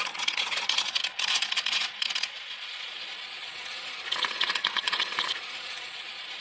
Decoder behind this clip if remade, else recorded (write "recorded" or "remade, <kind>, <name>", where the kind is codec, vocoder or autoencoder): remade, vocoder, Vocos